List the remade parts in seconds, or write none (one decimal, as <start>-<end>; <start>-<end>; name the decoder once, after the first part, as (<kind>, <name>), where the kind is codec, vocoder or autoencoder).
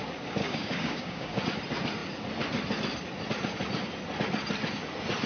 0.4-1.4 (codec, DAC)